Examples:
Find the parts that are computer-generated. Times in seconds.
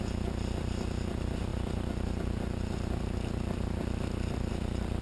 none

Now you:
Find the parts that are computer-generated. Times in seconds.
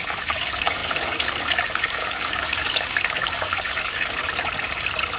0.0-4.2 (codec, DAC)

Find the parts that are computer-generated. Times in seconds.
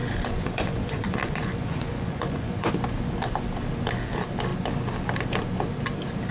0.0-2.7 (vocoder, Vocos)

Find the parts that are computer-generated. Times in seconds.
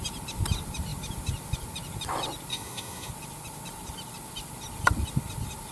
2.5-3.1 (autoencoder, DAC-VAE)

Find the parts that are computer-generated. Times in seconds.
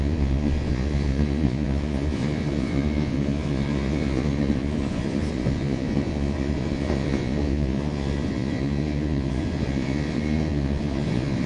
0.0-11.5 (vocoder, Vocos)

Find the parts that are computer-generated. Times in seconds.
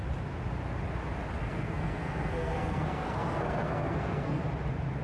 1.4-4.4 (codec, SNAC)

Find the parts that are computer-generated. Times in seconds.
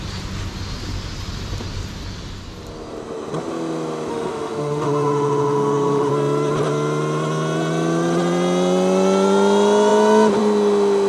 4.1-6.1 (autoencoder, DAC-VAE)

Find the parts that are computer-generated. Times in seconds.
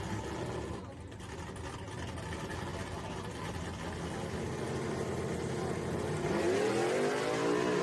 none